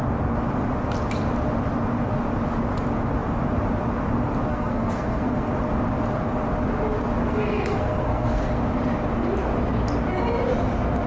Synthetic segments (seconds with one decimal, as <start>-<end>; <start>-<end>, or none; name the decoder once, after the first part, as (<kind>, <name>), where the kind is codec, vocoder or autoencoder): 4.5-5.5 (codec, SNAC); 7.2-8.6